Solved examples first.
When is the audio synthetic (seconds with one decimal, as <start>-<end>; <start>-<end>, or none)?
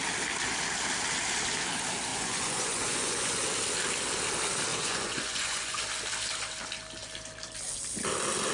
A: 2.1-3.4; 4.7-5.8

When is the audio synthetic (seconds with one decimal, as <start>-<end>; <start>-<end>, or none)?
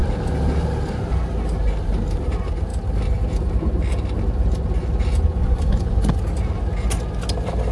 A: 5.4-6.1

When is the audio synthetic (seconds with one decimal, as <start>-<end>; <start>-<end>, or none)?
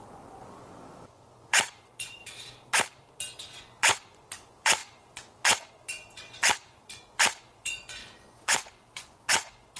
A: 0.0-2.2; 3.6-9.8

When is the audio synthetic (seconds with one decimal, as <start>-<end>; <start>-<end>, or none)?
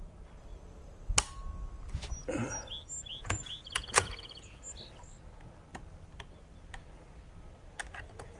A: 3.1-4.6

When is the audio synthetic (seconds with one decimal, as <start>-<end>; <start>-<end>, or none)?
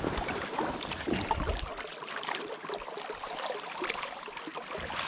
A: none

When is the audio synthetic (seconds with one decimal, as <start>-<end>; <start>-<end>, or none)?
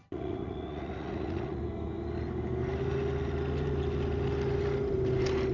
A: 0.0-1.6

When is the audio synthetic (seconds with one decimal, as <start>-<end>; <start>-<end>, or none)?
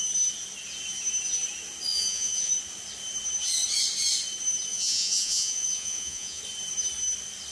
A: 1.9-2.5; 4.7-6.4